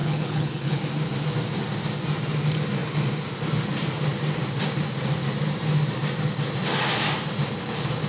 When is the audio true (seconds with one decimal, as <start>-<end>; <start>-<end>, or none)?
0.8-8.1